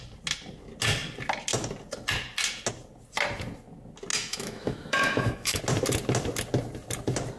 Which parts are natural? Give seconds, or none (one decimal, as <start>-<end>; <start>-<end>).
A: 0.0-4.1; 5.6-7.4